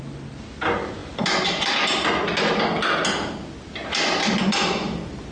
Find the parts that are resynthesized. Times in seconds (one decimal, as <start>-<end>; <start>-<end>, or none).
none